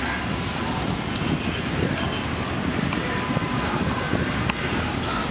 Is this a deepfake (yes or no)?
no